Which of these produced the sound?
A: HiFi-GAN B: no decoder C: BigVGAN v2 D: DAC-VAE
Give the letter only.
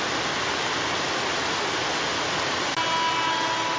B